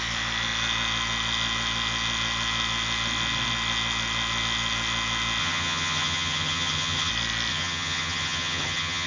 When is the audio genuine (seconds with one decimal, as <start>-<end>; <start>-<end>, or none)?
0.0-5.4; 7.1-7.5